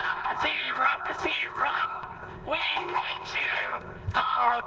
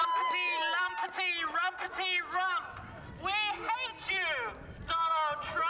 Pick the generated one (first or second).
first